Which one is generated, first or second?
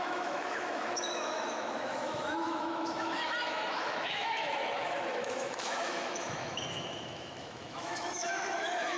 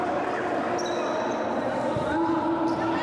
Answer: first